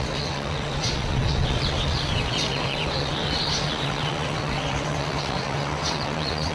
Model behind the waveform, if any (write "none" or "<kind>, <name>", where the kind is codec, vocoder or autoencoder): vocoder, WaveNeXt